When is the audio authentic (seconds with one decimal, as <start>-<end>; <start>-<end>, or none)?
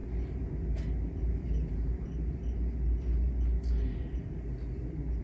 0.0-1.7; 2.1-5.2